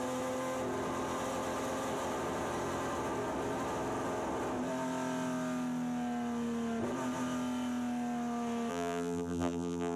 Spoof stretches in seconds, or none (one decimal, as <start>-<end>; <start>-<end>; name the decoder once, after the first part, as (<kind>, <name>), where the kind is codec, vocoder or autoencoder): 8.7-10.0 (vocoder, BigVGAN v2)